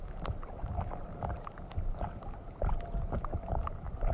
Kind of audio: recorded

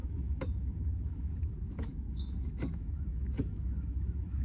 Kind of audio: remade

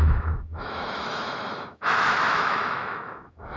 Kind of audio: remade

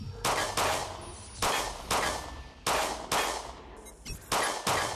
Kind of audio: recorded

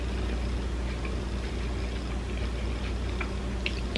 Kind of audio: recorded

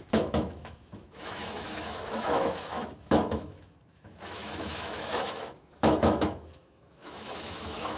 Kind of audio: remade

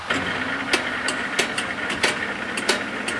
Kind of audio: recorded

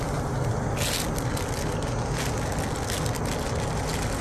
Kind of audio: recorded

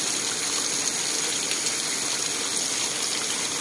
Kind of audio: recorded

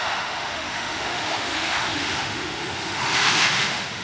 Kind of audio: remade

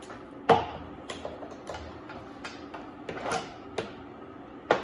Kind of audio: recorded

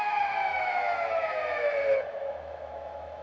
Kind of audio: remade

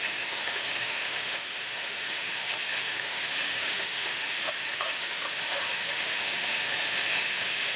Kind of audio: remade